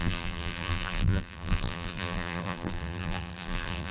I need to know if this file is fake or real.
fake